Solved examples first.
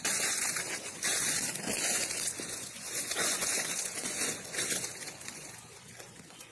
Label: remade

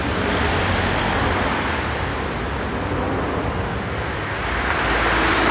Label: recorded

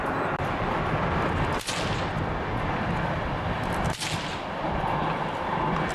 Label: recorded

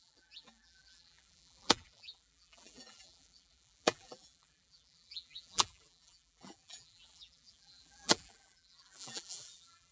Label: remade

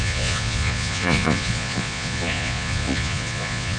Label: remade